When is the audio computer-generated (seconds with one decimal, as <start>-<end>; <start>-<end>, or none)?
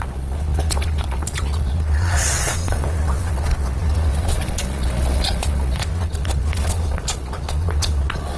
0.0-8.4